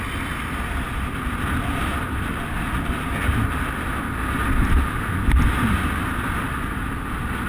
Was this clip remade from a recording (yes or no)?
no